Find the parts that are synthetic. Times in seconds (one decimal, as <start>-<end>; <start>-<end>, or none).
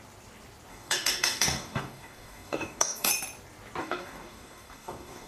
0.7-3.1; 3.8-5.3